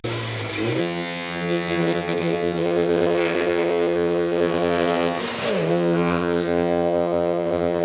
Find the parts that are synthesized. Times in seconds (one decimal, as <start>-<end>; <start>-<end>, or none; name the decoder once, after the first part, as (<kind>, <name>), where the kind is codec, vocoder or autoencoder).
0.8-5.2 (vocoder, HiFi-GAN); 5.7-7.8

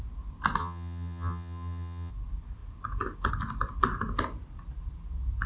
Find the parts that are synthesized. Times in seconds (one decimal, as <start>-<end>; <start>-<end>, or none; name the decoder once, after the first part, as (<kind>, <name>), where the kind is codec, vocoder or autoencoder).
0.6-2.1 (vocoder, HiFi-GAN)

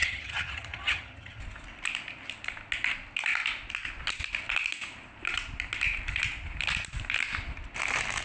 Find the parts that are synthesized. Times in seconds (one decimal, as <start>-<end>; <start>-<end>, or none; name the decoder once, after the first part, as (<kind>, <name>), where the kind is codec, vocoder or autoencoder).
0.0-1.4 (vocoder, HiFi-GAN)

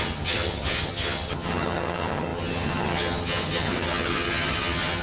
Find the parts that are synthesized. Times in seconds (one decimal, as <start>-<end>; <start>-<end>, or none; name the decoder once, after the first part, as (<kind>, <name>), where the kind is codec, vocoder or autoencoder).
0.0-5.0 (vocoder, HiFi-GAN)

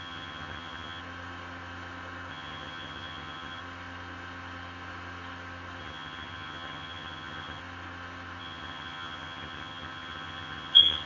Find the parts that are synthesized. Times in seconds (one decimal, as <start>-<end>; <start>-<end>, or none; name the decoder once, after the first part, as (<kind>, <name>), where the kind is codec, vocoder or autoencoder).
0.0-1.0 (vocoder, HiFi-GAN); 2.3-3.6; 5.8-7.6; 8.4-11.1

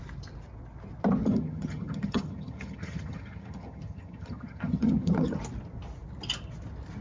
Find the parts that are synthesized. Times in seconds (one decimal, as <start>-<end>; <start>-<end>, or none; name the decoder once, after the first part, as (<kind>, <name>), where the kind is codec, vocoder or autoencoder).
1.2-5.4 (vocoder, HiFi-GAN)

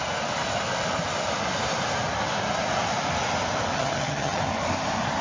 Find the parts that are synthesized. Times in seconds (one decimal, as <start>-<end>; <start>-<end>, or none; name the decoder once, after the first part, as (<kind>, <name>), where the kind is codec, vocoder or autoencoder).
3.7-4.4 (vocoder, HiFi-GAN)